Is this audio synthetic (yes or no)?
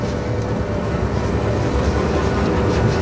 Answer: no